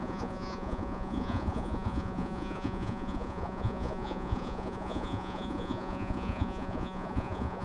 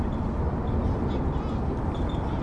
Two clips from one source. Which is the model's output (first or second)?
first